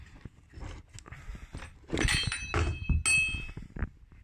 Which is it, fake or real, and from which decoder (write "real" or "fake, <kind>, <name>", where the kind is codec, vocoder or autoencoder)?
real